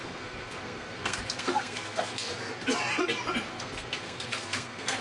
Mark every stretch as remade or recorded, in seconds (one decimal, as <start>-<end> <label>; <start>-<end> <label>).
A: 0.0-2.3 remade; 2.3-3.5 recorded; 3.5-5.0 remade

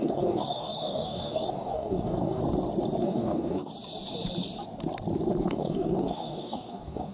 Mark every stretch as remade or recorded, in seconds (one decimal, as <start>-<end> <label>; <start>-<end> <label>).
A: 0.0-2.4 remade; 2.4-3.0 recorded; 3.0-3.7 remade; 3.7-5.5 recorded; 5.5-7.1 remade